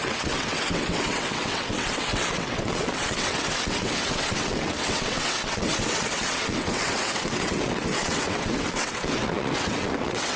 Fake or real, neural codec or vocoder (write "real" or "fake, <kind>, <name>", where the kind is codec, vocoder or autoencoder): fake, vocoder, WaveNeXt